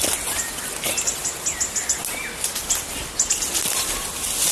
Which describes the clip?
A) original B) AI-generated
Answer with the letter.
A